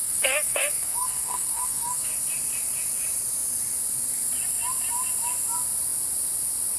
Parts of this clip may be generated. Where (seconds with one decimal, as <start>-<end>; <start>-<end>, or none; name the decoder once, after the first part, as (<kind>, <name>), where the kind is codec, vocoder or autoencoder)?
0.0-2.1 (codec, SNAC)